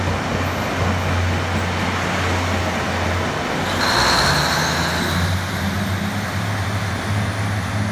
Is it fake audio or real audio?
real